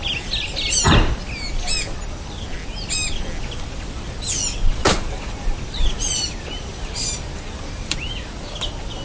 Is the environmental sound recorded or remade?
recorded